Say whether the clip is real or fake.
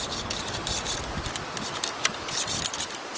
real